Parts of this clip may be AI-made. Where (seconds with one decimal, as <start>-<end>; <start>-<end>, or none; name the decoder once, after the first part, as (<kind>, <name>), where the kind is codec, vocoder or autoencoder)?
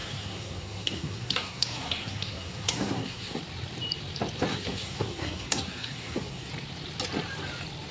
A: 0.0-3.4 (codec, SNAC); 4.5-6.5